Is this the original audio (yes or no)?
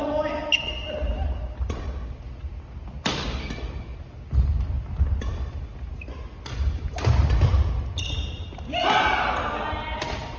yes